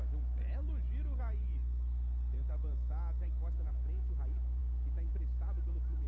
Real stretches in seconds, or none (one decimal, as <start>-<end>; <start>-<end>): 0.0-6.1